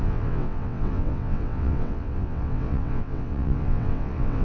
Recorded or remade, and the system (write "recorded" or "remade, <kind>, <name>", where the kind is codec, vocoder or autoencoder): remade, vocoder, WaveNeXt